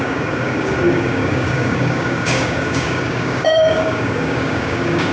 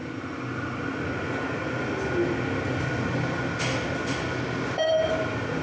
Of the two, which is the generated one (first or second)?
first